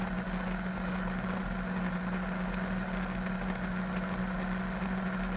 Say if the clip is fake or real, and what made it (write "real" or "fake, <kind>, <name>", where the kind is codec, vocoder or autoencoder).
real